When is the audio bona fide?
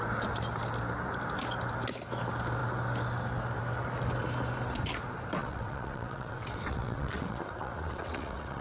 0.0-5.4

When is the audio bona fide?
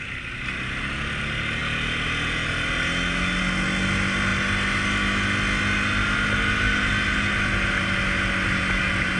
0.0-9.2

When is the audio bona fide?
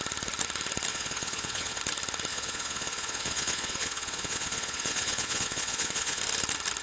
0.0-0.9; 1.8-2.3; 6.2-6.8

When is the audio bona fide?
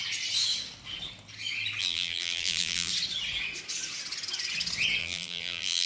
0.0-1.8; 2.9-5.0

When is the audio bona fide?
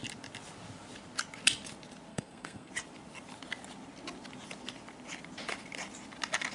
0.0-2.1; 2.7-6.5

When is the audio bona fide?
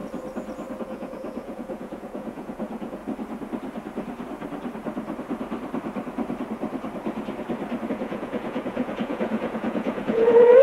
0.0-0.8; 3.0-7.9